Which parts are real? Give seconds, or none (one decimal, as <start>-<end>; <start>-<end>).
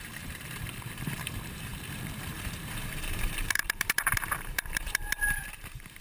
none